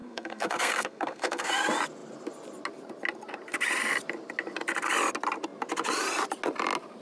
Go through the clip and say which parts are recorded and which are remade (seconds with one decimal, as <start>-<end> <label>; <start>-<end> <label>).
0.0-1.5 remade; 1.5-7.0 recorded